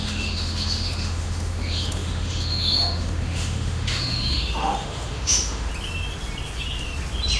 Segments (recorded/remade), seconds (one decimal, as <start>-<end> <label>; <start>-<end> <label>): 0.0-5.7 remade; 5.7-7.4 recorded